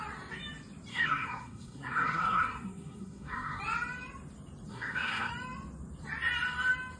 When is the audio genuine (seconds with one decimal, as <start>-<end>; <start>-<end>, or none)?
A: 0.0-0.9; 3.6-4.7; 5.3-7.0